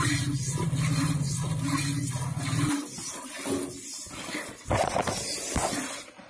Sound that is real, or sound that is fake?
real